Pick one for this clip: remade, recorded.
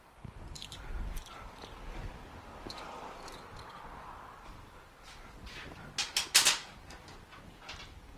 recorded